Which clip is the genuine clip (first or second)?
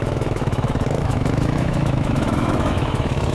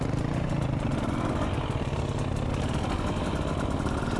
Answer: second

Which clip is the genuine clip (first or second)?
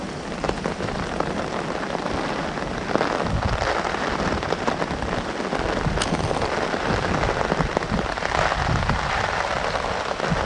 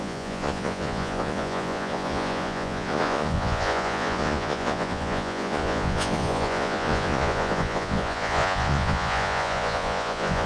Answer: first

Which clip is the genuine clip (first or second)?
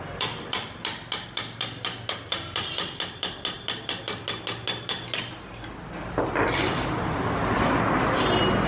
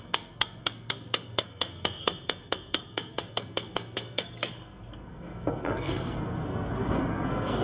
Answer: first